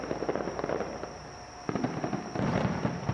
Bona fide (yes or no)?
yes